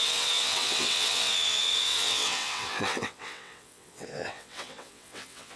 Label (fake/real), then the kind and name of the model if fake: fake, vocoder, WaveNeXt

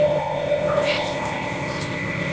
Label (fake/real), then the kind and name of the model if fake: fake, codec, ZipCodec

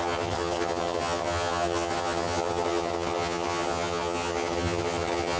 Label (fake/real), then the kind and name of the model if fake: fake, vocoder, HiFi-GAN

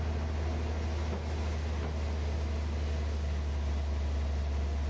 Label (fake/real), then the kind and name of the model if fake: real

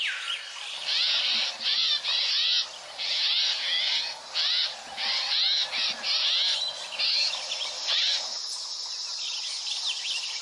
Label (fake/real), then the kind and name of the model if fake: real